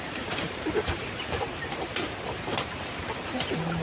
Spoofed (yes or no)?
yes